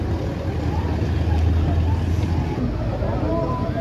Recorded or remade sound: recorded